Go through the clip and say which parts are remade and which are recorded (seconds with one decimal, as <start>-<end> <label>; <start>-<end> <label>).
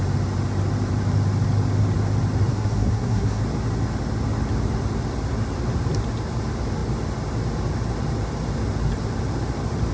0.0-2.5 recorded; 2.5-3.4 remade; 3.4-9.9 recorded